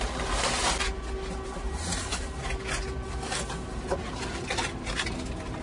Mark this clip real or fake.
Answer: real